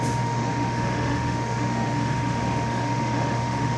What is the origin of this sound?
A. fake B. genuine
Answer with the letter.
A